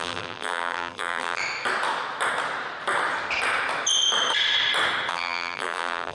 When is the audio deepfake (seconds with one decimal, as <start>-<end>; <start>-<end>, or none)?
0.0-1.4; 5.1-6.1